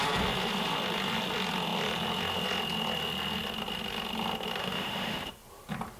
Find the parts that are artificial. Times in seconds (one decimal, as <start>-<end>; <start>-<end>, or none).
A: 4.6-5.3